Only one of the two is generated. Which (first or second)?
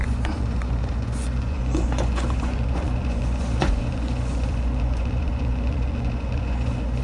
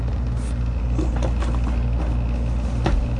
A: first